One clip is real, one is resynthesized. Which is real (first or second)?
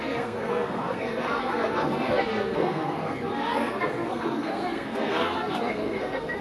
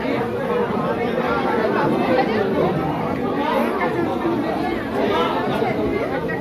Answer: second